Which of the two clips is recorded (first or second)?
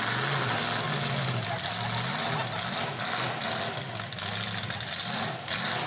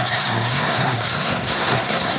first